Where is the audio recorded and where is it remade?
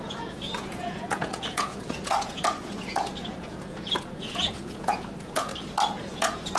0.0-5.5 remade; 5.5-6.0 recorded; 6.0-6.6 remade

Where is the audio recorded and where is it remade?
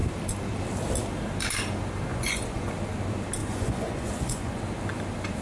0.0-2.1 recorded; 2.1-2.7 remade; 2.7-3.4 recorded; 3.4-4.6 remade; 4.6-5.4 recorded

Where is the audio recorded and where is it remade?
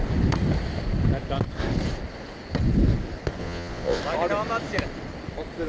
0.0-3.4 recorded; 3.4-4.0 remade; 4.0-5.7 recorded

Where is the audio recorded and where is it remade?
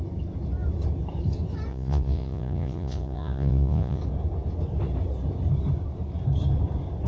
0.0-1.7 recorded; 1.7-4.0 remade; 4.0-7.1 recorded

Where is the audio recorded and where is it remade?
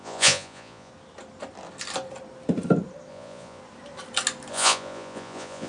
0.0-0.9 remade; 0.9-3.1 recorded; 3.1-3.6 remade; 3.6-4.5 recorded; 4.5-5.7 remade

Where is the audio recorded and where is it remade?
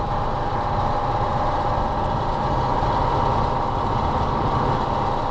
0.0-5.3 recorded